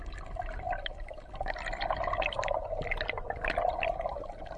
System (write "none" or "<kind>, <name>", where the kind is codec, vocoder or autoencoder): vocoder, BigVGAN v2